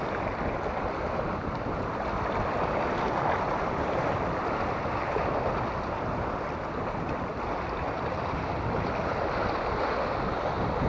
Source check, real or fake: real